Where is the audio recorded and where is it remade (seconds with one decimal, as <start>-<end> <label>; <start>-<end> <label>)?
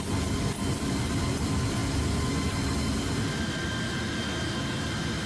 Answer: 0.0-5.3 recorded